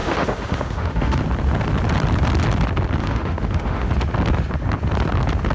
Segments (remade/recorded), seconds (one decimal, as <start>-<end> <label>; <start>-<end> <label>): 0.0-1.2 remade; 1.2-3.0 recorded; 3.0-3.9 remade; 3.9-5.5 recorded